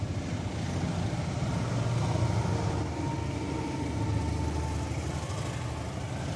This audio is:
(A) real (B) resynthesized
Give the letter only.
A